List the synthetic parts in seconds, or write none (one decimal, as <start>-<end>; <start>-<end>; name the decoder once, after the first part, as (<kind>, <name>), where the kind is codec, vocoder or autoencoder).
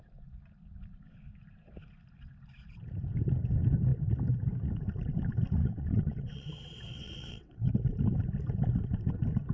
5.6-7.7 (vocoder, WaveNeXt)